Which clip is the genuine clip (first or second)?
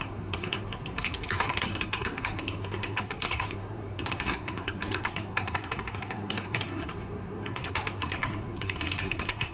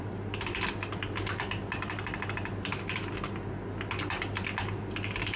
second